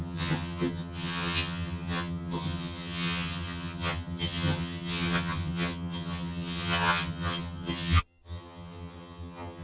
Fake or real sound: fake